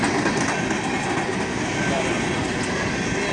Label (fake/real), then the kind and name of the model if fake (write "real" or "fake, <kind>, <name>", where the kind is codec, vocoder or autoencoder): real